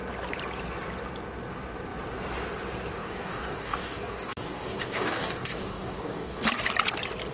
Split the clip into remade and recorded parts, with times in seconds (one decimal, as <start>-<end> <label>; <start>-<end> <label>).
0.0-3.0 recorded; 3.0-6.4 remade; 6.4-7.3 recorded